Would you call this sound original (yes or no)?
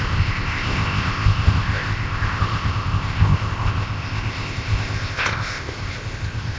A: no